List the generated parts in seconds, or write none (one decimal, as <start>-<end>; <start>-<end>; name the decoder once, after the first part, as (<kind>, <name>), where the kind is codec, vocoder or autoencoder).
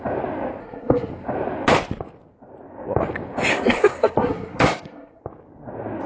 0.6-1.1 (codec, SNAC); 3.5-5.2